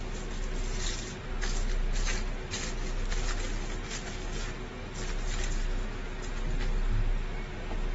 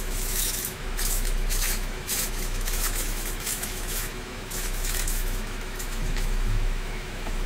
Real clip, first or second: first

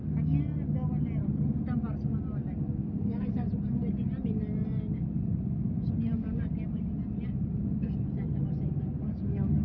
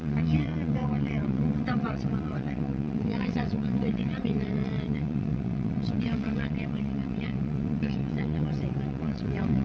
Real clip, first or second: first